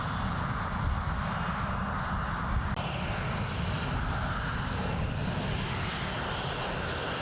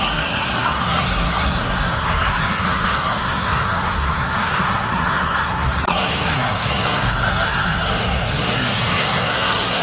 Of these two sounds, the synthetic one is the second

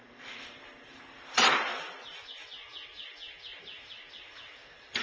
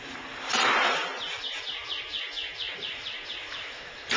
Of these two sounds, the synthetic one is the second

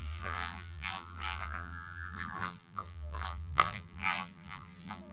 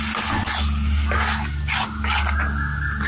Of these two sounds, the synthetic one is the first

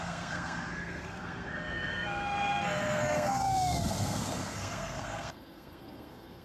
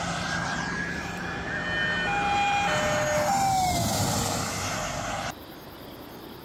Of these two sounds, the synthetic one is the first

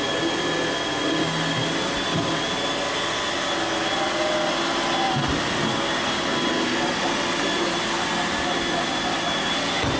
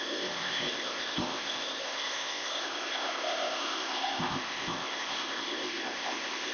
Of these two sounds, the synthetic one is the second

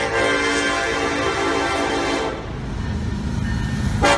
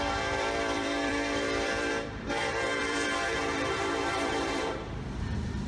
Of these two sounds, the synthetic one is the second